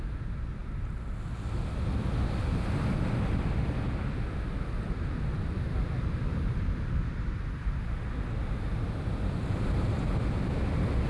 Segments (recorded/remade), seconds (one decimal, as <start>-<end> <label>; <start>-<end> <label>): 0.0-11.1 recorded